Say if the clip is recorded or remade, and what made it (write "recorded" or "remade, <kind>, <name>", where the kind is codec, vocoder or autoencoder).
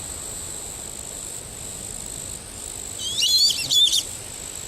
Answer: recorded